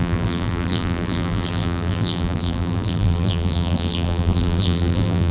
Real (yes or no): no